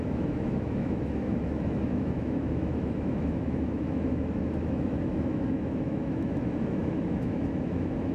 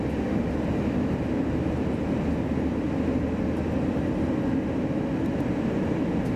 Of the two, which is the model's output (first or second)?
first